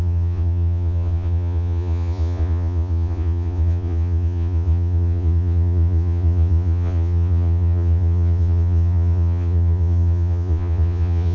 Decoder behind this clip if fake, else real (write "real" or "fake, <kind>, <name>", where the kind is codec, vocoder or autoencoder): fake, vocoder, Vocos